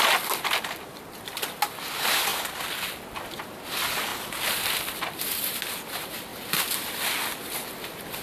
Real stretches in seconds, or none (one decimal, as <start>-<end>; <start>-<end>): 0.0-4.1; 5.6-8.2